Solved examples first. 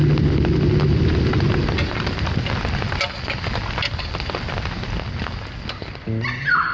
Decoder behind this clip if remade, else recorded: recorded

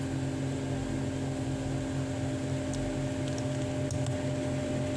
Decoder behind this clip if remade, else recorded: recorded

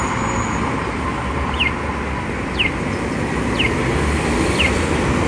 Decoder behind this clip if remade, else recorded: recorded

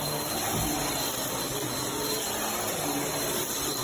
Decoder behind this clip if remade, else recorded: recorded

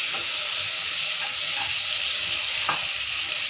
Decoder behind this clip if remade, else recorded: recorded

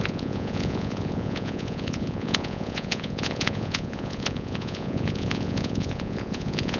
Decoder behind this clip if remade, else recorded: remade, vocoder, Vocos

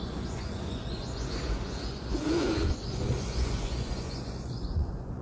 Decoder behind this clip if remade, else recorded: remade, vocoder, Vocos